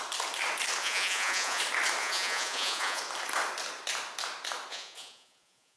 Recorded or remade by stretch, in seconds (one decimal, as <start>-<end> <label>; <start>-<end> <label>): 0.0-0.8 recorded; 0.8-1.6 remade; 1.6-2.0 recorded; 2.0-3.0 remade; 3.0-4.7 recorded; 4.7-5.8 remade